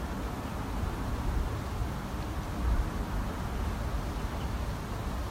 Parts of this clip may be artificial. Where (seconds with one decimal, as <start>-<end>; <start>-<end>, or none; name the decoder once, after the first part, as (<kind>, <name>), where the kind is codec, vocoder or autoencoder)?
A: 0.0-1.8 (vocoder, BigVGAN v2)